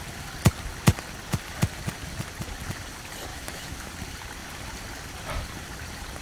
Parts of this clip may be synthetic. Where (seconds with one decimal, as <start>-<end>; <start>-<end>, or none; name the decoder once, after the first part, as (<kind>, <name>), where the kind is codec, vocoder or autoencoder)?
3.3-3.9 (autoencoder, DAC-VAE)